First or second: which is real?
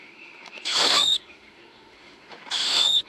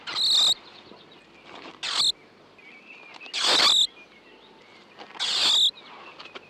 second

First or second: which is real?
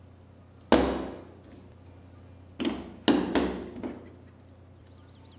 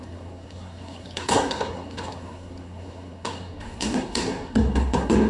first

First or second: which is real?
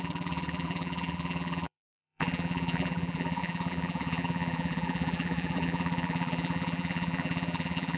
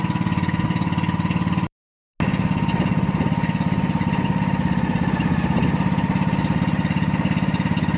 second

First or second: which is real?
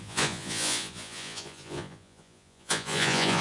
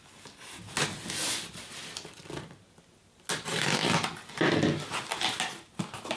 second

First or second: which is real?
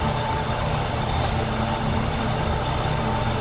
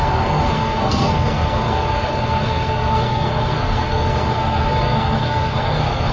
first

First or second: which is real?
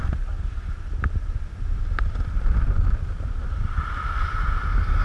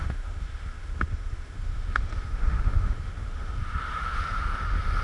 first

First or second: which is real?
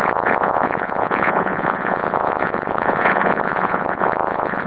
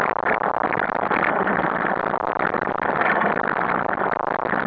second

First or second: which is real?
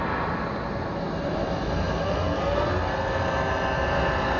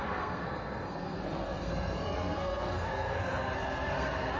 first